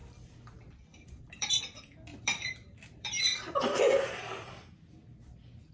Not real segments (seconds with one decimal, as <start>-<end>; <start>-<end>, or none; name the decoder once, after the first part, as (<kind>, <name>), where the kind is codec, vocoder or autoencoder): 0.0-1.6 (vocoder, BigVGAN v2); 2.1-4.5